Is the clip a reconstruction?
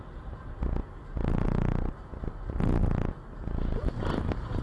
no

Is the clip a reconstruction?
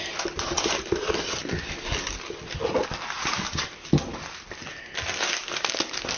no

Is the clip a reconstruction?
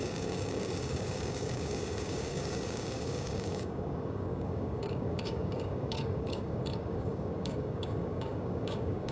yes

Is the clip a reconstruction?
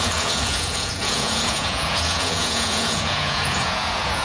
yes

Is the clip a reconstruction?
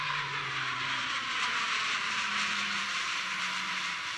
yes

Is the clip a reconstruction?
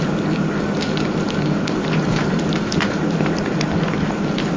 no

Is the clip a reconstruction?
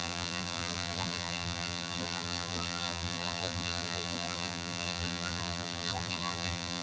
yes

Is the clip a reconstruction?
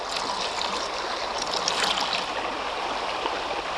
no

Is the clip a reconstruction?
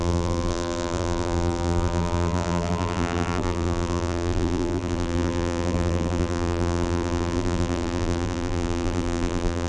yes